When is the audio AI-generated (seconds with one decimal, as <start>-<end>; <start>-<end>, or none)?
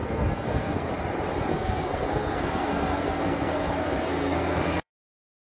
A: 0.0-0.9; 1.5-4.9